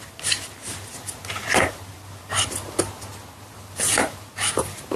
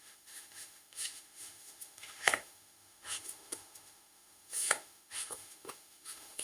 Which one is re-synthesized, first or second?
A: second